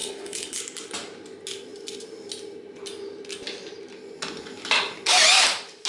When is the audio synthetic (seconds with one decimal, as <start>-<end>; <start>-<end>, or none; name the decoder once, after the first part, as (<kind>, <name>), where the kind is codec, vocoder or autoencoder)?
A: 0.0-0.6 (codec, HILCodec)